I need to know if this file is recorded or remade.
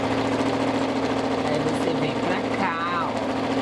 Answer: recorded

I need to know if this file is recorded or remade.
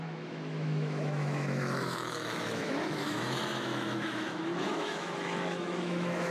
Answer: remade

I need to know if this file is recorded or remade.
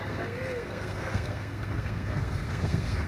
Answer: remade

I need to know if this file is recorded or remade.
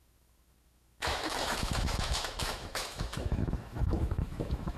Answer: remade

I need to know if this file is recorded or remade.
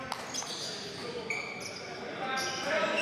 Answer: recorded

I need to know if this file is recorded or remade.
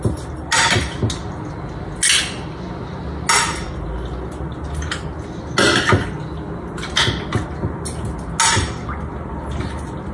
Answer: recorded